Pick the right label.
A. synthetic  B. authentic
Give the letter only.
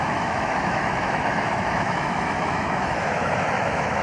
A